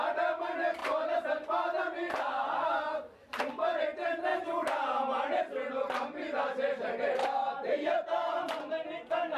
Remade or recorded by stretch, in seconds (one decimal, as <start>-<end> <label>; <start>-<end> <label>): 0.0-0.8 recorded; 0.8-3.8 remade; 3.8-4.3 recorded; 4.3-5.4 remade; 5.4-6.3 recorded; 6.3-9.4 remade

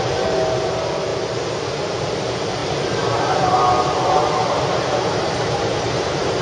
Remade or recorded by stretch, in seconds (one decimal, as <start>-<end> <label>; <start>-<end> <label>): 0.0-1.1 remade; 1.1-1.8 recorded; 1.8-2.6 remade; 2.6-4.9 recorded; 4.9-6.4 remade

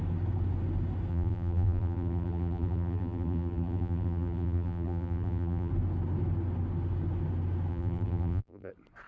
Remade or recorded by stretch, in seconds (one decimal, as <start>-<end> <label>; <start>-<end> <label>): 0.0-1.1 recorded; 1.1-5.7 remade; 5.7-7.7 recorded; 7.7-8.7 remade; 8.7-9.1 recorded

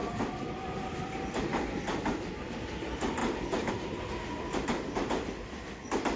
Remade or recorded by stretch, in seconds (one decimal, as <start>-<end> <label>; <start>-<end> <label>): 0.0-2.3 remade; 2.3-3.2 recorded; 3.2-3.7 remade; 3.7-6.2 recorded

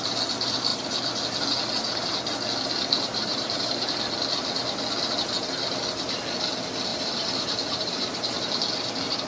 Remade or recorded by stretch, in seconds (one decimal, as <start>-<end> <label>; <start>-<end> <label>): 0.0-3.2 recorded; 3.2-4.0 remade; 4.0-6.9 recorded; 6.9-8.5 remade; 8.5-9.3 recorded